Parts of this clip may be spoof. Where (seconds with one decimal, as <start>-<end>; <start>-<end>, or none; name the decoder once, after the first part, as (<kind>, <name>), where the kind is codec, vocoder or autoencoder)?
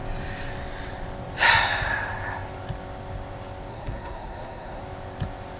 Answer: 3.7-4.8 (codec, SNAC)